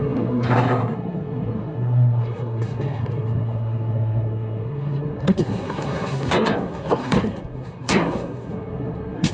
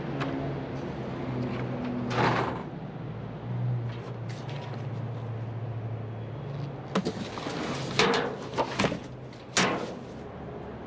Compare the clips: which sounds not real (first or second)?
first